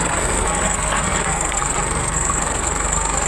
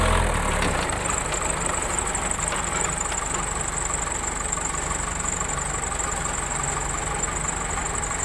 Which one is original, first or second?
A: second